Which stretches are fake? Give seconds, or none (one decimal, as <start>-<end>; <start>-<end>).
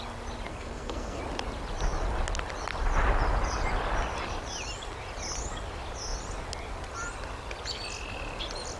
0.5-1.2